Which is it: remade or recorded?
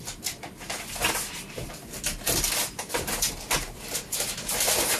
remade